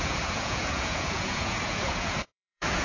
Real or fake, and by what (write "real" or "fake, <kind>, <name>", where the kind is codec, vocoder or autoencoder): fake, vocoder, Vocos